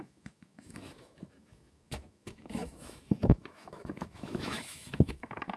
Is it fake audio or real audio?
fake